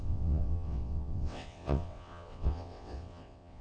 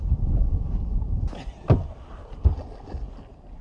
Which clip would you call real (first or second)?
second